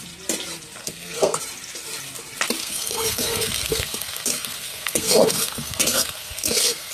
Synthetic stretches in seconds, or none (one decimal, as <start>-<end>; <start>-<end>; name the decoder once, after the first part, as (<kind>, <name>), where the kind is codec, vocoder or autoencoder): 0.8-1.4 (codec, SNAC); 2.6-6.9